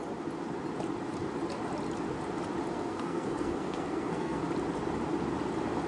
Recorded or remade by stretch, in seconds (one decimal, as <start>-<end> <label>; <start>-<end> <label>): 0.0-2.7 recorded; 2.7-4.4 remade; 4.4-5.9 recorded